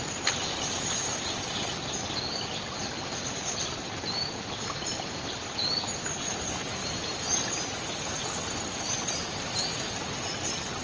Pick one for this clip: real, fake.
real